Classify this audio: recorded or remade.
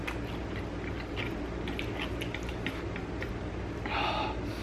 recorded